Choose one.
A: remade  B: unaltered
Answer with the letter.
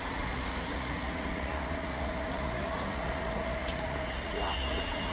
A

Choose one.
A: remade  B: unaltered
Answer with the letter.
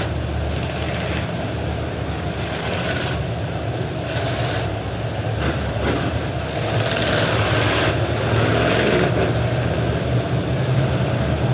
B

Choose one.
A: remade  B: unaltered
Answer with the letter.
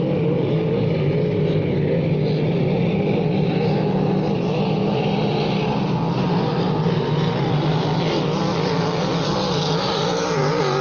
B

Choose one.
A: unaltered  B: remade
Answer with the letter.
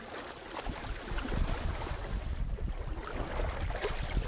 A